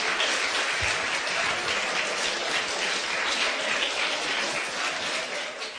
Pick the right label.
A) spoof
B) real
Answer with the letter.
B